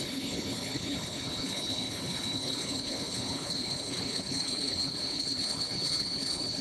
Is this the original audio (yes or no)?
no